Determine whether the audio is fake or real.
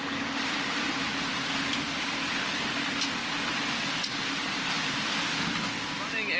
real